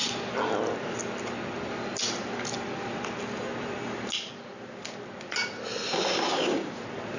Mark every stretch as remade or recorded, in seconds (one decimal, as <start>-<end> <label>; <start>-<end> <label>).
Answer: 0.0-6.3 recorded; 6.3-6.8 remade; 6.8-7.2 recorded